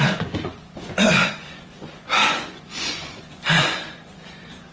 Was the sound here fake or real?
fake